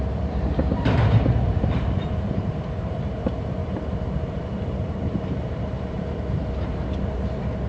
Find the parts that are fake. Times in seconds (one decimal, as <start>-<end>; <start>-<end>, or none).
0.0-3.6; 4.4-7.7